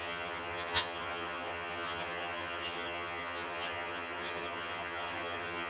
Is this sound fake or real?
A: fake